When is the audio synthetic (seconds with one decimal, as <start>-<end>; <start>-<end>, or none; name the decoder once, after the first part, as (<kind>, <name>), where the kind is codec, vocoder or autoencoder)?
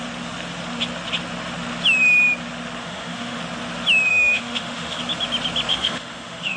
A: 2.8-3.4 (autoencoder, DAC-VAE); 4.1-5.0; 5.7-6.6